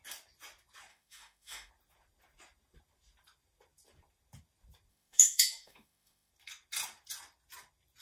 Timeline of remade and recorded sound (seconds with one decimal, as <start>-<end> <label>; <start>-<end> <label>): 0.0-0.9 recorded; 0.9-1.7 remade; 1.7-4.9 recorded; 4.9-6.3 remade; 6.3-8.0 recorded